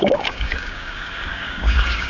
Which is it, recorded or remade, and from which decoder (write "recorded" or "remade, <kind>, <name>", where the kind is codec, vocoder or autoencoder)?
remade, codec, DAC